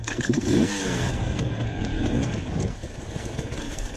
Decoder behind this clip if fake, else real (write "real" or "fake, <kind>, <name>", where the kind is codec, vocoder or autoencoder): fake, codec, SNAC